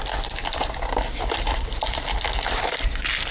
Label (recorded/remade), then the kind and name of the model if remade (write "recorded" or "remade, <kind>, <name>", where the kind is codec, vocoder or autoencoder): remade, vocoder, BigVGAN v2